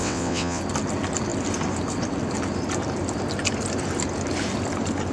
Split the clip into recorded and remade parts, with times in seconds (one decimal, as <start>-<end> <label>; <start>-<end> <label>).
0.0-0.6 remade; 0.6-5.1 recorded